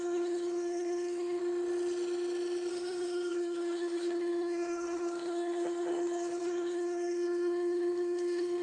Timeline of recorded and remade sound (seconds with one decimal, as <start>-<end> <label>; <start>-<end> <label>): 0.0-1.4 remade; 1.4-2.7 recorded; 2.7-8.6 remade